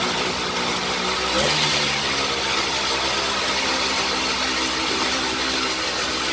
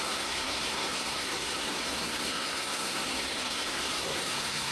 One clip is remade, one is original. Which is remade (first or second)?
second